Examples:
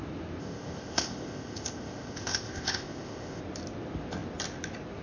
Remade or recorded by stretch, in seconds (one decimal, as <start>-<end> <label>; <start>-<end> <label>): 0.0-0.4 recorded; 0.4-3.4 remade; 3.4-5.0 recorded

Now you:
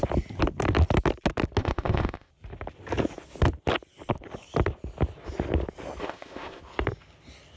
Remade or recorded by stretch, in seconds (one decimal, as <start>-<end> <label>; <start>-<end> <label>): 0.0-1.6 recorded; 1.6-2.3 remade; 2.3-6.0 recorded; 6.0-6.6 remade; 6.6-7.6 recorded

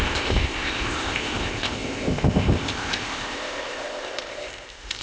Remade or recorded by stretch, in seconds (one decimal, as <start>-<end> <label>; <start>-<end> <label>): 0.0-5.0 remade